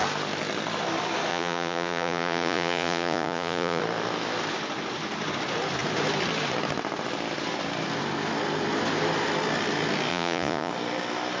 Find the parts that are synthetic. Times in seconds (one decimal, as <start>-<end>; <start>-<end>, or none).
1.3-3.8; 10.1-10.7